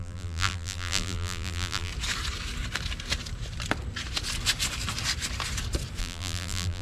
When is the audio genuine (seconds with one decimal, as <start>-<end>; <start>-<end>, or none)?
1.9-6.0